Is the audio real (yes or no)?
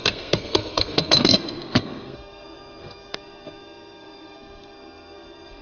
no